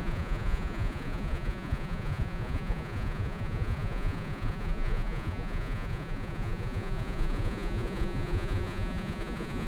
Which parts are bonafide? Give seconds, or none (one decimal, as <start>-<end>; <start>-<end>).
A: none

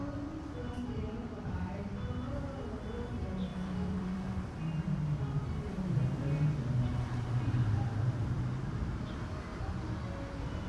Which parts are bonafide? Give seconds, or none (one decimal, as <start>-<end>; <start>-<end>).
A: 0.0-1.2; 1.8-3.5; 8.0-10.7

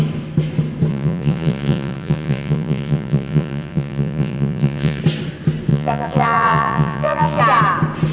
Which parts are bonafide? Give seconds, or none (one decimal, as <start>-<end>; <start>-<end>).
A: 0.0-0.9; 5.0-5.7; 7.4-8.1

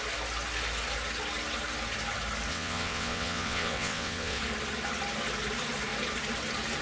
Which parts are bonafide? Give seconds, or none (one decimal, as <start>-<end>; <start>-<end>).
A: 0.0-2.5; 4.4-6.8

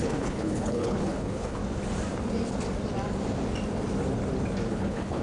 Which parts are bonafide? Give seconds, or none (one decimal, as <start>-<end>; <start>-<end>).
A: 1.6-4.7

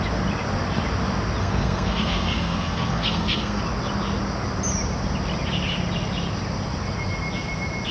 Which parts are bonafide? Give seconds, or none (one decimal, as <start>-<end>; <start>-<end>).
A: 0.0-1.4; 3.6-7.9

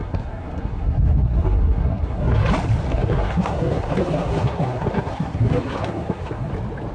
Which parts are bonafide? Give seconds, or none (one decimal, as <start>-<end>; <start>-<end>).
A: 2.4-2.9; 6.5-6.9